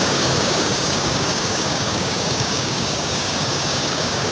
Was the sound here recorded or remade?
remade